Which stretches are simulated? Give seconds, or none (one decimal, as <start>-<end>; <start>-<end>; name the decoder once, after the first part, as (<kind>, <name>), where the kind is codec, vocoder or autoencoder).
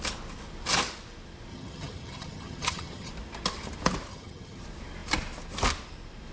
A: 1.5-3.1 (vocoder, HiFi-GAN); 4.1-4.6